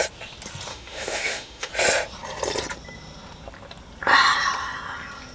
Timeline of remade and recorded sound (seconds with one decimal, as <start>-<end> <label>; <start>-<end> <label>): 0.0-0.7 recorded; 0.7-1.7 remade; 1.7-5.3 recorded